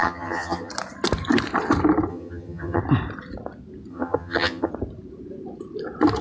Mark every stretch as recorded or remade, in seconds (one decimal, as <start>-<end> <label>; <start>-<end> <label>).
0.0-0.7 remade; 0.7-2.1 recorded; 2.1-2.8 remade; 2.8-3.9 recorded; 3.9-4.7 remade; 4.7-6.2 recorded